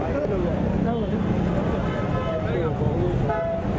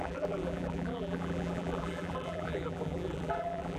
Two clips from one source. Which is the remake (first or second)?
second